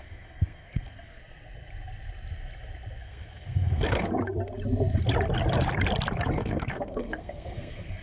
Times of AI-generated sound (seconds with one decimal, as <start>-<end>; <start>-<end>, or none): 0.0-1.2; 3.0-4.1; 6.3-8.0